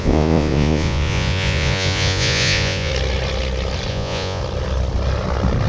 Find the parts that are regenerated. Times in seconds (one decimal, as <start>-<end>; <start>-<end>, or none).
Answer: 0.0-2.9; 3.9-4.4